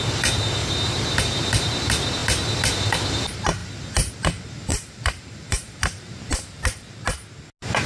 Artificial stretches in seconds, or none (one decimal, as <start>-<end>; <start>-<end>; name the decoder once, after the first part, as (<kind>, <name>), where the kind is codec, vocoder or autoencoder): 0.6-1.5 (vocoder, BigVGAN v2); 4.7-6.2